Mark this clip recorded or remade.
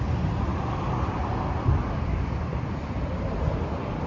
recorded